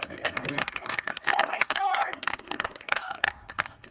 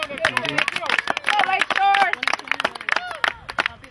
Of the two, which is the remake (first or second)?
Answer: first